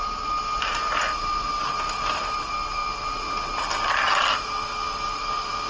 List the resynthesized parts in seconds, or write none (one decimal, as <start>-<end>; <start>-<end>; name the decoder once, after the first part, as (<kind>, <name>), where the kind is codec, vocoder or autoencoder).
none